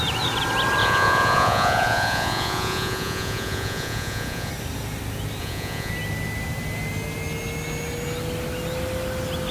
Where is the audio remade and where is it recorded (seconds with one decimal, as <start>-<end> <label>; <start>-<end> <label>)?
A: 0.0-0.8 recorded; 0.8-4.5 remade; 4.5-5.4 recorded; 5.4-5.9 remade; 5.9-9.5 recorded